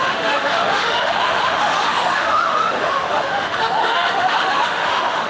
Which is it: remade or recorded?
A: remade